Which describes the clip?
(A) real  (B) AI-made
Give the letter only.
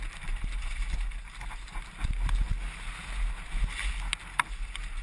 A